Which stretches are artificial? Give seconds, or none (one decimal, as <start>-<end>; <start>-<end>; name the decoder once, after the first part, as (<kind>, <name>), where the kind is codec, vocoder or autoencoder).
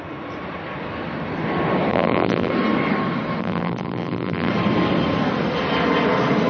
1.9-2.5 (vocoder, BigVGAN v2); 3.4-4.5